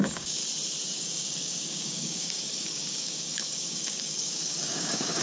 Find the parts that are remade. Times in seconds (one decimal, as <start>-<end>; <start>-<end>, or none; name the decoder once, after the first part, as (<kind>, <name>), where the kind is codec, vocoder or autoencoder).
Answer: 0.0-0.4 (codec, DAC); 0.9-5.2